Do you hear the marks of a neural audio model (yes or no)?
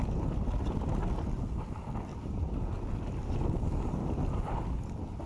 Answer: no